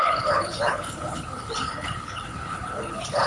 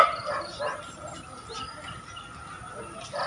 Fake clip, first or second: first